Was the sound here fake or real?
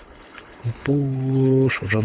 fake